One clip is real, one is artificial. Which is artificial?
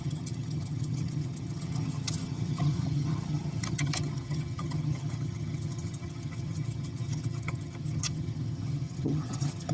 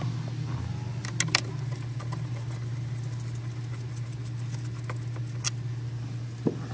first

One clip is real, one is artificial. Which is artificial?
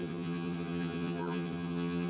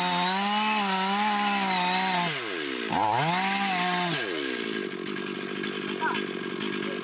first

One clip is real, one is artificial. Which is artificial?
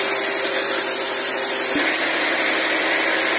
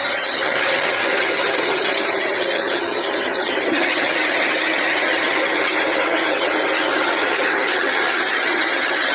second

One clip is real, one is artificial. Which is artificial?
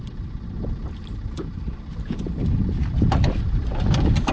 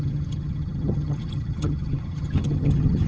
second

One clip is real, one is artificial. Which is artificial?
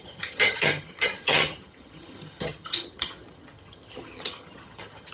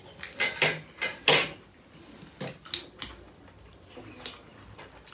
first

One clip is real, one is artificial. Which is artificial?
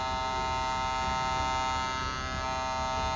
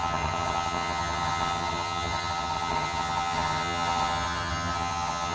second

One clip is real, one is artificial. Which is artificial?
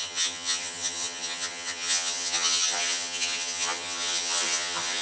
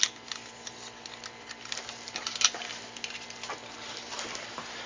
first